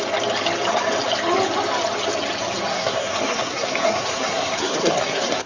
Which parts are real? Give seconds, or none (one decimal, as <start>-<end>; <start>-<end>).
0.0-2.7